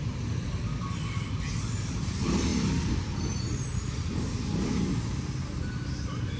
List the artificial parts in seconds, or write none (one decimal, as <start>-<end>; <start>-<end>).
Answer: none